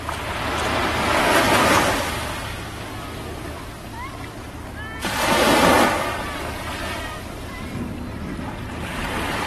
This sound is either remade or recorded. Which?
recorded